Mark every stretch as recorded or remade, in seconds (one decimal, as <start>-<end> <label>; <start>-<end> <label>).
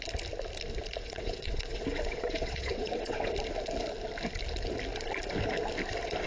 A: 0.0-1.0 recorded; 1.0-3.3 remade; 3.3-6.3 recorded